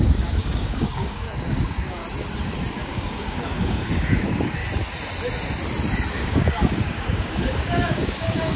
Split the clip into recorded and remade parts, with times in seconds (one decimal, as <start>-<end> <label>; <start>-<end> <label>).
0.0-2.0 remade; 2.0-2.7 recorded; 2.7-4.6 remade; 4.6-6.1 recorded; 6.1-8.6 remade